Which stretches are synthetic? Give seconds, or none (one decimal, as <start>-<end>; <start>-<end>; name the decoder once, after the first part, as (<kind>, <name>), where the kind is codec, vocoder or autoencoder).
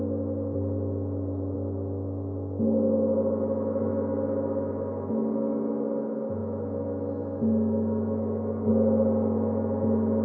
3.9-4.7 (autoencoder, DAC-VAE); 6.4-8.7